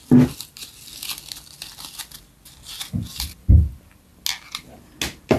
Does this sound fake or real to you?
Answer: real